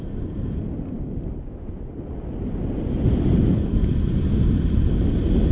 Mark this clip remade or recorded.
recorded